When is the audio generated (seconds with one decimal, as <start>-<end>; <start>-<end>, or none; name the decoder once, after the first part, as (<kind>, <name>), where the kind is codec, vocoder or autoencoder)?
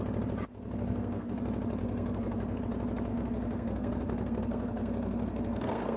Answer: 0.5-1.4 (codec, SNAC); 1.8-2.6; 3.1-6.0